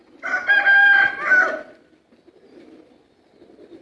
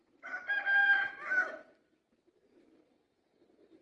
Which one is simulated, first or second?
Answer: second